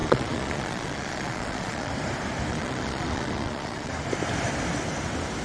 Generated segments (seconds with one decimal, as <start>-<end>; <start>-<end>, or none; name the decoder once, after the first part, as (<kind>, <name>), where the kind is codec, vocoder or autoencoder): 0.0-1.9 (vocoder, Vocos); 2.5-3.9